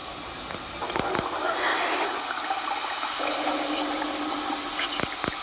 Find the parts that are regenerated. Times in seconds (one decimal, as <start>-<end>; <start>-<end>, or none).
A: none